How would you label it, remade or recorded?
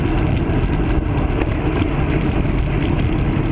recorded